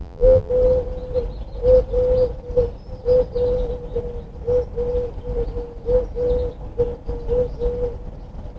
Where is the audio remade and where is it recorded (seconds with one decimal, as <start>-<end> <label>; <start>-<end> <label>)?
0.0-0.5 remade; 0.5-8.6 recorded